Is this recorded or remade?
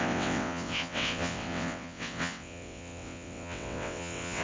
remade